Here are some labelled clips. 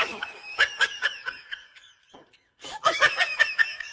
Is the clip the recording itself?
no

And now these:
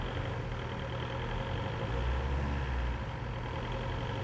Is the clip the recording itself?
yes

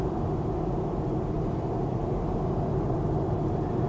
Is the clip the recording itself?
yes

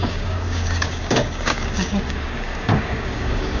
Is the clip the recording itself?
no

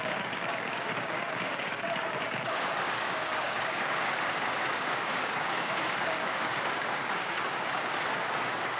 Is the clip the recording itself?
no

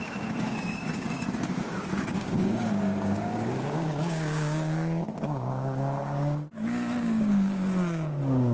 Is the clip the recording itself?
no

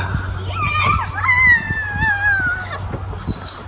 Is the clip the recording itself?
yes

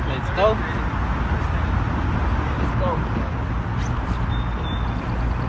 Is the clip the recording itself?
yes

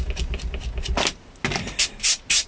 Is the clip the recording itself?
yes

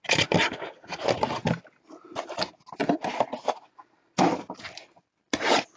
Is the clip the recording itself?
yes